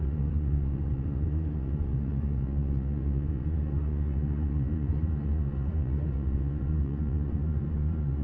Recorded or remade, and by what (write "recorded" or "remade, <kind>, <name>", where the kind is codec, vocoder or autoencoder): remade, vocoder, Vocos